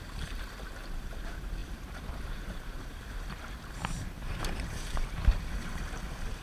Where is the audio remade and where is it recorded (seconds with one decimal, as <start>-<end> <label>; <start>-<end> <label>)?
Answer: 0.0-6.4 remade